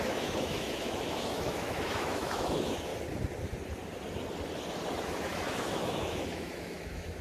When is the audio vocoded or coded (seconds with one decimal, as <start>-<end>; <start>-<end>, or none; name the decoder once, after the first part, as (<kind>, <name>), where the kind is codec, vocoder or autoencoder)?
0.0-2.9 (autoencoder, DAC-VAE); 5.0-7.2